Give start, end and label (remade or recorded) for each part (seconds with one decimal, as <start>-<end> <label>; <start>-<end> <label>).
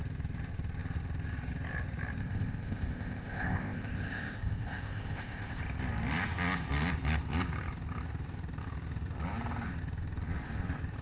0.0-2.2 recorded; 2.2-5.6 remade; 5.6-11.0 recorded